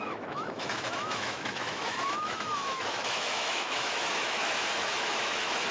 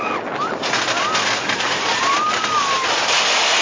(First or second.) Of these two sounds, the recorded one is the second